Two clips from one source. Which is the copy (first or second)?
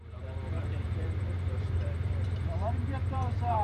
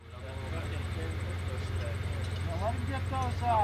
first